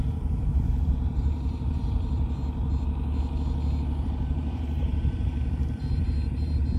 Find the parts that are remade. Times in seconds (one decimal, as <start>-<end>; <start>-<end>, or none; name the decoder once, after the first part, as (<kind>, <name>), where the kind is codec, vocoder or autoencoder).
0.0-2.4 (vocoder, BigVGAN v2); 4.0-6.8